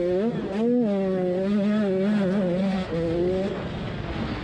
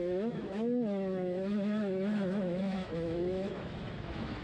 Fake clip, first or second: second